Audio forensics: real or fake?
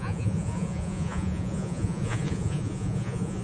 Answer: fake